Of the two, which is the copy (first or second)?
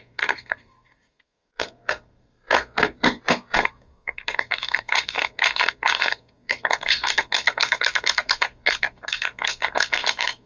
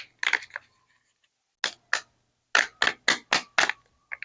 first